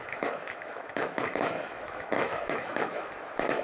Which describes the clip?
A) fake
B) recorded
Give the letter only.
A